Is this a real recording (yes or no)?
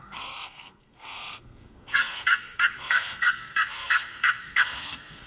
no